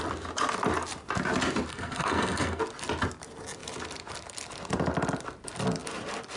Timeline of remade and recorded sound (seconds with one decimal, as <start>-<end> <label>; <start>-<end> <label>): 0.0-1.7 recorded; 1.7-2.6 remade; 2.6-6.4 recorded